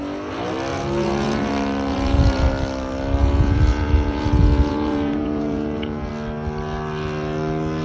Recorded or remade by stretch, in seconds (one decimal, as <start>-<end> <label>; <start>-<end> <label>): 0.0-0.7 recorded; 0.7-1.5 remade; 1.5-1.9 recorded; 1.9-2.5 remade; 2.5-3.2 recorded; 3.2-6.1 remade; 6.1-7.8 recorded